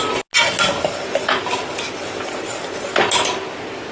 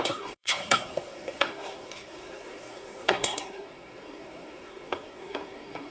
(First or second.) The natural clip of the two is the first